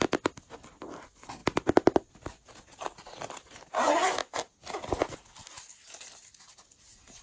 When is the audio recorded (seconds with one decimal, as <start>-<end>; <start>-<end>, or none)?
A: 0.0-7.2